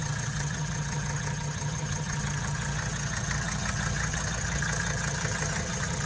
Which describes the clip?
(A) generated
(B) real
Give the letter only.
A